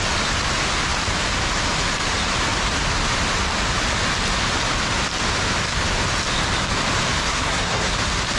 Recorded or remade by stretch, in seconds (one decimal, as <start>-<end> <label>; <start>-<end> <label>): 0.0-7.3 recorded; 7.3-7.9 remade; 7.9-8.4 recorded

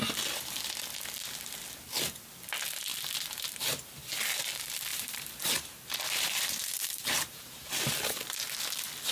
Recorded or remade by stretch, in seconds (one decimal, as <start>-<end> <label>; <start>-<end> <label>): 0.0-4.9 recorded; 4.9-7.7 remade; 7.7-9.1 recorded

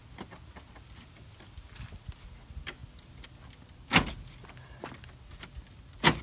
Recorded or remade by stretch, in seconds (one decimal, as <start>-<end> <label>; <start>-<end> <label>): 0.0-6.2 recorded

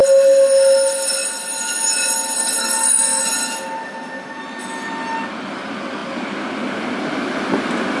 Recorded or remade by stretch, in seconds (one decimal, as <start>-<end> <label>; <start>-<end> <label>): 0.0-2.6 recorded; 2.6-3.2 remade; 3.2-8.0 recorded

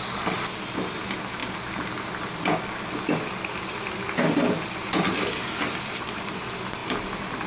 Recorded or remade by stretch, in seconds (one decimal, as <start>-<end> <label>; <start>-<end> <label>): 0.0-7.5 recorded

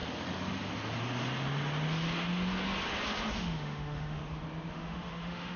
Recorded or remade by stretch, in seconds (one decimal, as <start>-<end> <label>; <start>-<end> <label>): 0.0-3.4 recorded; 3.4-4.2 remade; 4.2-4.7 recorded; 4.7-5.6 remade

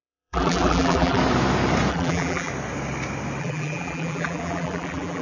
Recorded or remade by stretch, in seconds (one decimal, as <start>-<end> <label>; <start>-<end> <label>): 0.0-1.2 remade; 1.2-1.9 recorded; 1.9-2.5 remade; 2.5-3.4 recorded; 3.4-5.2 remade

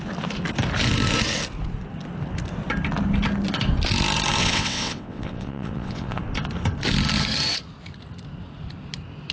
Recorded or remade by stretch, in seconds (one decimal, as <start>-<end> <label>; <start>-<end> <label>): 0.0-4.4 recorded; 4.4-6.2 remade; 6.2-9.3 recorded